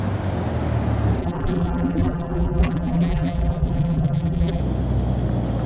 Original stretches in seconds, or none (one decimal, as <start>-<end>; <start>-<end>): 0.0-1.2; 4.6-5.7